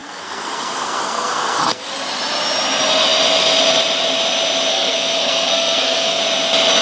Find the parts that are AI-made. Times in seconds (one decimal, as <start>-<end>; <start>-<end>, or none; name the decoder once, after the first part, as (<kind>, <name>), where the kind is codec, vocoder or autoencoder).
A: 0.0-1.9 (codec, SNAC); 4.7-6.2